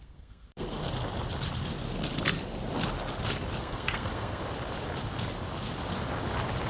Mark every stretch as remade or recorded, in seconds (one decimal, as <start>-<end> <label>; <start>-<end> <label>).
0.0-0.8 remade; 0.8-3.6 recorded; 3.6-4.4 remade; 4.4-6.7 recorded